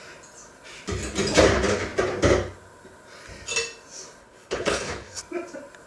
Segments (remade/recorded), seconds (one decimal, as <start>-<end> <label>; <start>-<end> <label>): 0.0-4.2 recorded; 4.2-5.2 remade; 5.2-5.9 recorded